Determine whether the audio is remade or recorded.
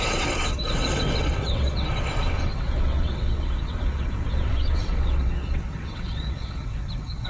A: remade